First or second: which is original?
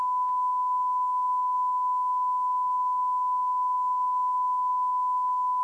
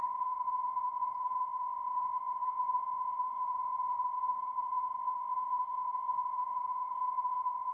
first